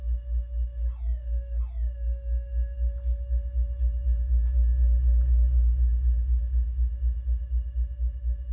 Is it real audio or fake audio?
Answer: real